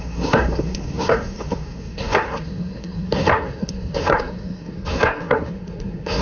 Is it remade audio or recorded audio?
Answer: remade